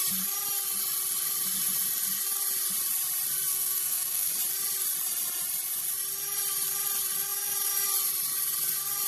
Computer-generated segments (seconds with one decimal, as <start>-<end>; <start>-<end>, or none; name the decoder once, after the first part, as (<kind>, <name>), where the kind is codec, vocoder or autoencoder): 3.5-4.3 (codec, SNAC)